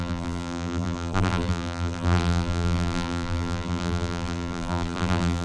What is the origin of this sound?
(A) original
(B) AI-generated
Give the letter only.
B